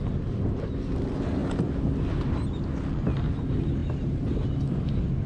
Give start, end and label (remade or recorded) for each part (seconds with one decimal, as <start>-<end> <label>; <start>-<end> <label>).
0.0-5.3 recorded